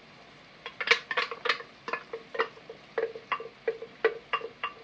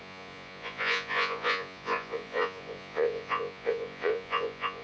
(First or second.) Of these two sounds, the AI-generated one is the second